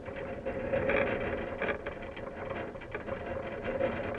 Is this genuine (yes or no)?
yes